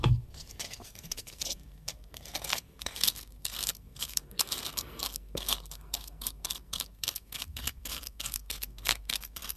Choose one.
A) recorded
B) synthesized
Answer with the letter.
B